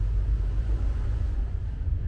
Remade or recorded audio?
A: remade